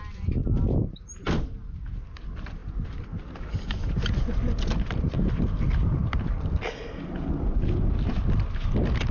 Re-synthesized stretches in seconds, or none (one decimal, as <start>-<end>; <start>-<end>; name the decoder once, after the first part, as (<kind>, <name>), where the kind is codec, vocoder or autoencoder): none